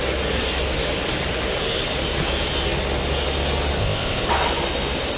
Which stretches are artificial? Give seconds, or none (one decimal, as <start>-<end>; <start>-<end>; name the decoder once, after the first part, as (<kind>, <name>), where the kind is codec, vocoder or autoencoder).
3.8-4.3 (codec, ZipCodec)